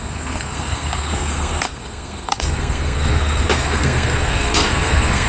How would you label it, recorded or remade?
remade